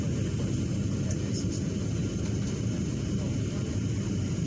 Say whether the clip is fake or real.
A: real